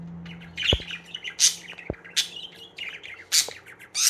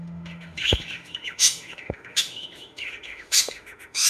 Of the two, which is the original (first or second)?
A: first